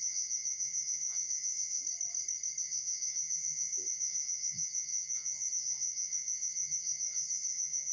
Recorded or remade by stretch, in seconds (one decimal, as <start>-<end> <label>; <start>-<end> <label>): 0.0-1.8 remade; 1.8-2.6 recorded; 2.6-7.9 remade